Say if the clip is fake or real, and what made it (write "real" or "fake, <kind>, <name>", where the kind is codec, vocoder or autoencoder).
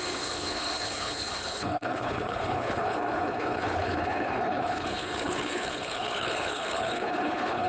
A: fake, codec, HILCodec